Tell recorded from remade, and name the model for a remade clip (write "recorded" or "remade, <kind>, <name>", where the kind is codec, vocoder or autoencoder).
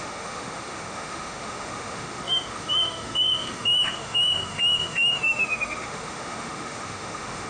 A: remade, autoencoder, DAC-VAE